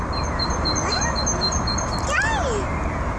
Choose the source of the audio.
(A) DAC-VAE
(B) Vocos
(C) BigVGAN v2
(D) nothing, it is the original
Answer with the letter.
D